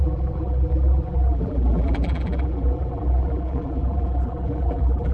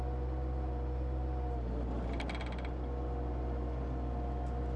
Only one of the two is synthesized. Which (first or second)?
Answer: first